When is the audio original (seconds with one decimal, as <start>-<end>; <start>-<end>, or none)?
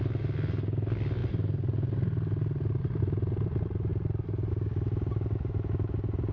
0.0-6.3